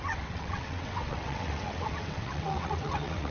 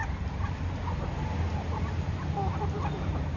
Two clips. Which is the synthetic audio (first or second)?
first